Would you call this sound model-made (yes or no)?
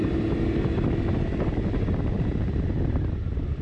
no